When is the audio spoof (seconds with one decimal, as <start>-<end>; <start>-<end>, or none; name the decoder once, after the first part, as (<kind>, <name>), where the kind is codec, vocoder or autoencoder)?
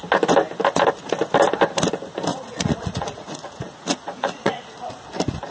2.3-4.6 (vocoder, Vocos)